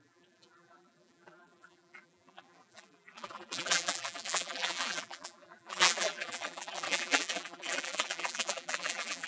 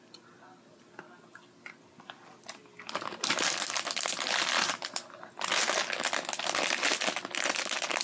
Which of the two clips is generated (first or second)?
first